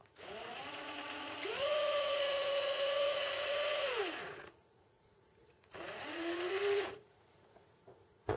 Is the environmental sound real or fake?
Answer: fake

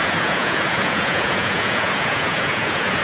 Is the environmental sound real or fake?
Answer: fake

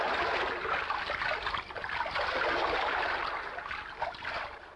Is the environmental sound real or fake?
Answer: real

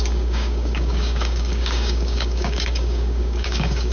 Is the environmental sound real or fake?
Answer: fake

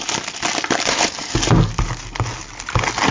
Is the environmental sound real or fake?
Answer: real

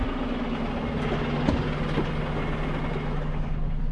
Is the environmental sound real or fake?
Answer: real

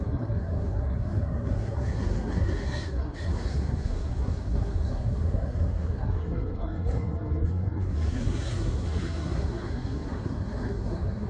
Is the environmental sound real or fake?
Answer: fake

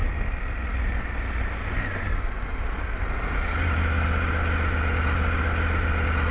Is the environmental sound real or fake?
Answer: real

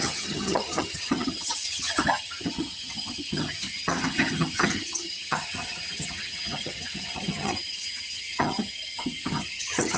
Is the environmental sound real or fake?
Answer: fake